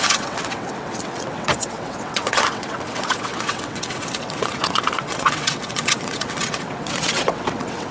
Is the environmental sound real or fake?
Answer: fake